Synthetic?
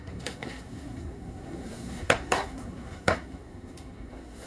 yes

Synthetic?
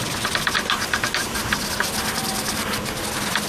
no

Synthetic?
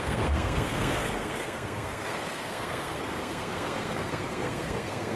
yes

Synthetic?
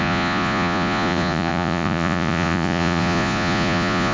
yes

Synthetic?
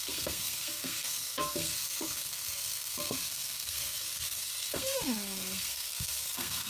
yes